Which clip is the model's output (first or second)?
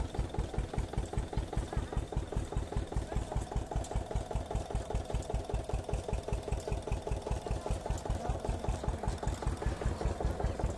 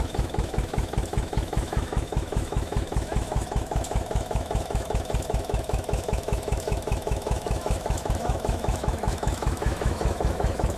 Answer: second